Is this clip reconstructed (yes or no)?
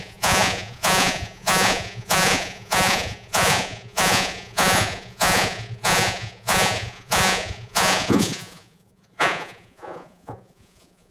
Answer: yes